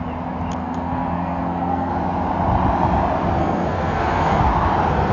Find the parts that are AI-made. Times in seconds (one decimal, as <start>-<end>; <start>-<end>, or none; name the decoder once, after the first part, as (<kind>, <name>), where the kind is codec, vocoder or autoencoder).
0.6-1.9 (codec, SNAC); 3.4-4.4